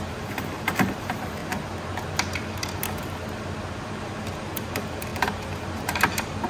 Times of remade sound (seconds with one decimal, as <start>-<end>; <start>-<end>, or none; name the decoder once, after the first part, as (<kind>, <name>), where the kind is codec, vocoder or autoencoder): 0.0-1.4 (vocoder, BigVGAN v2); 3.9-6.5

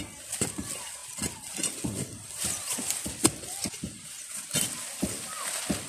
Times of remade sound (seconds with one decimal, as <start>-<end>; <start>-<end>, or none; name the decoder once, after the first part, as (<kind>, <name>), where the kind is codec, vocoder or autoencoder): none